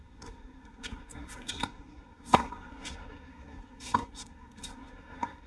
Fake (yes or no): yes